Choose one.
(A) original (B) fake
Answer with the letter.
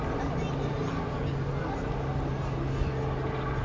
A